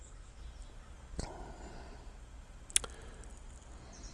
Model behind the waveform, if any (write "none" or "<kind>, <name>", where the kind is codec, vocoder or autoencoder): none